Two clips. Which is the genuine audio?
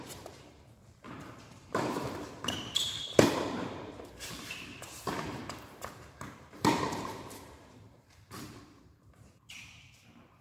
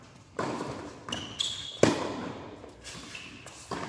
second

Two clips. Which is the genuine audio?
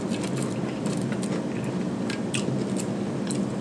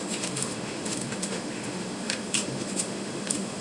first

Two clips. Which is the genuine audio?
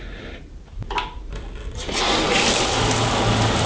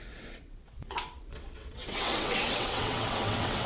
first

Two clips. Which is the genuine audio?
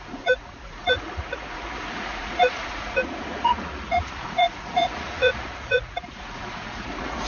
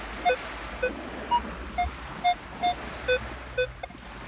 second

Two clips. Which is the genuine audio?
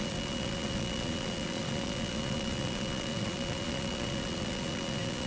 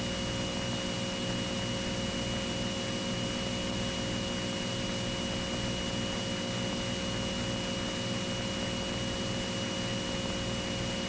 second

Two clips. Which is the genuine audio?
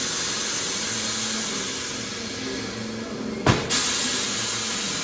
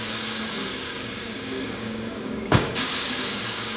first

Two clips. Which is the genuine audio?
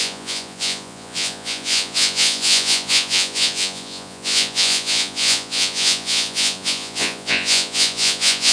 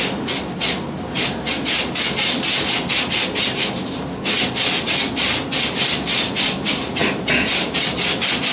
second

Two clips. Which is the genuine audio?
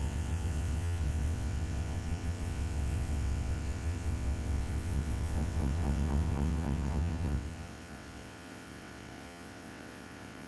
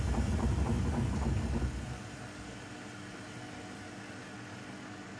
second